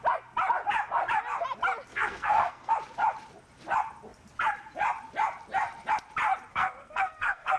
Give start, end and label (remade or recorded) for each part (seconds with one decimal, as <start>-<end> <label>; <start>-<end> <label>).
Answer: 0.0-1.9 recorded; 1.9-2.7 remade; 2.7-6.5 recorded; 6.5-7.6 remade